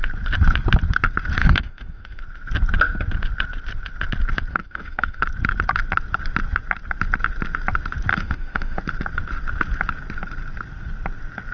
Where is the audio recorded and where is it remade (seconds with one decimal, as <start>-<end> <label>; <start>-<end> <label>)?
0.0-1.4 recorded; 1.4-2.2 remade; 2.2-4.5 recorded; 4.5-5.2 remade; 5.2-8.1 recorded; 8.1-8.8 remade; 8.8-11.5 recorded